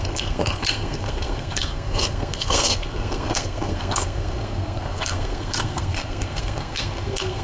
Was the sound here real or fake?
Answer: fake